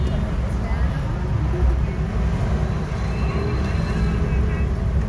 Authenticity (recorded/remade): recorded